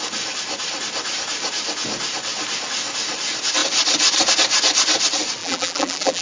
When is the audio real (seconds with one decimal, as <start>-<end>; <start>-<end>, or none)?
0.0-5.4